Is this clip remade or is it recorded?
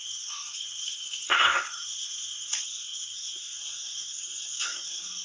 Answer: remade